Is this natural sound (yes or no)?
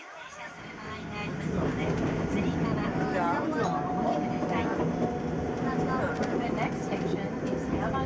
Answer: yes